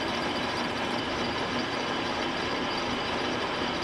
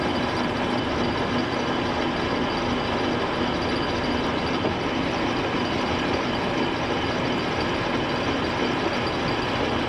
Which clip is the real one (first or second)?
second